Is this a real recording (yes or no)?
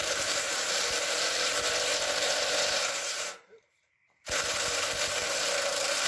no